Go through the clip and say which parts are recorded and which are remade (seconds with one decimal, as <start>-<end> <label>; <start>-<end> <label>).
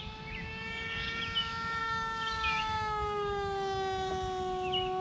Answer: 0.0-0.5 recorded; 0.5-1.2 remade; 1.2-1.8 recorded; 1.8-4.1 remade; 4.1-5.0 recorded